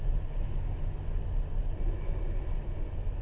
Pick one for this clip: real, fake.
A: real